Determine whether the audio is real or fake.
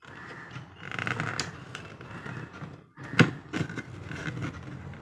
real